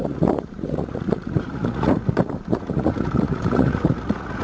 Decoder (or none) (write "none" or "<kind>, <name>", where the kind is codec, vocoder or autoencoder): vocoder, Vocos